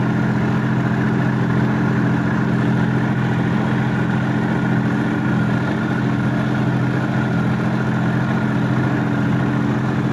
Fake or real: real